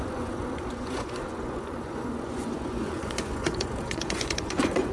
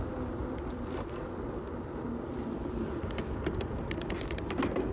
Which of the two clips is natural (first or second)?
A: second